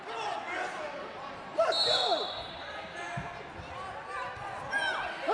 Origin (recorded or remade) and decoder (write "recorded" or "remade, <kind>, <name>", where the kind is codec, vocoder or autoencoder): recorded